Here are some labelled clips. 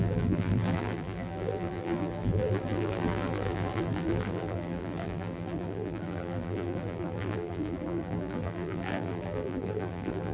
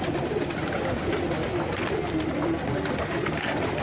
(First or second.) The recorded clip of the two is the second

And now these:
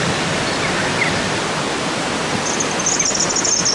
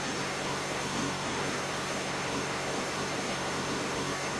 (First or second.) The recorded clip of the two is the first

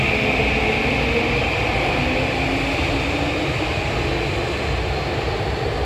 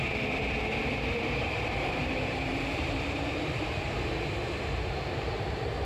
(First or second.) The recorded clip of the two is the first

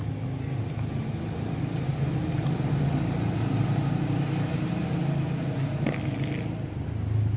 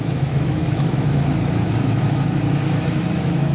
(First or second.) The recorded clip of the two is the first